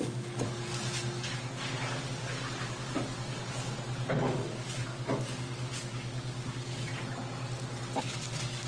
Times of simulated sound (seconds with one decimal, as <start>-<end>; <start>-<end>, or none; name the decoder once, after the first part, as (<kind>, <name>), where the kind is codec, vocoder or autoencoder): 0.0-0.7 (codec, DAC); 4.1-6.9; 8.0-8.7